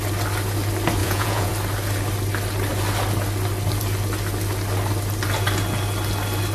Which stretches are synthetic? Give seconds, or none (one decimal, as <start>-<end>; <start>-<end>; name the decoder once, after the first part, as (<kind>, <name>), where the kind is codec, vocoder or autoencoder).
1.0-1.5 (vocoder, Vocos)